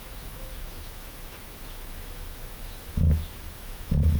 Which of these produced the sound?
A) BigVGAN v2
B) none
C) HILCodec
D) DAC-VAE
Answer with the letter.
D